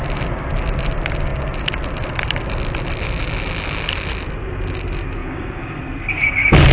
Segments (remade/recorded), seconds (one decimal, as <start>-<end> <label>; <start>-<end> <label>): 0.0-5.2 recorded; 5.2-5.8 remade; 5.8-6.7 recorded